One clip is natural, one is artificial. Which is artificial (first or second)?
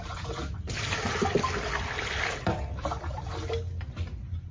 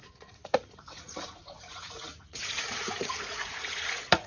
second